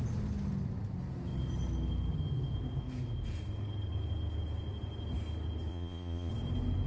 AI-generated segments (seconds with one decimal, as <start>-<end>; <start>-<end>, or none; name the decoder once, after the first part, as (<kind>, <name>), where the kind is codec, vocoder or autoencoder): 5.7-6.3 (vocoder, Vocos)